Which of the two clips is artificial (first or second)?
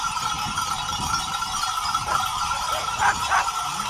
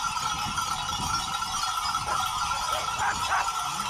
first